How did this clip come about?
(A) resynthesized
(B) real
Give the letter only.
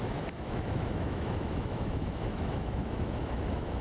A